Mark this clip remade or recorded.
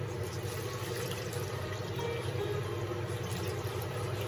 recorded